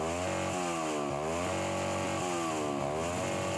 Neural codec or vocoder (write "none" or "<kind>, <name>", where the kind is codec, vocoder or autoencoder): none